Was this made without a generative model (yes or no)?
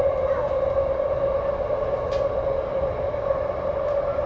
yes